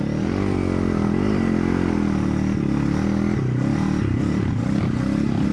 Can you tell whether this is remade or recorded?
recorded